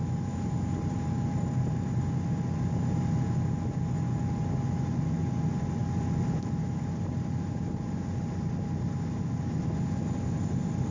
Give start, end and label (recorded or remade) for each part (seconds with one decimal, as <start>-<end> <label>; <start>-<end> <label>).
0.0-10.9 recorded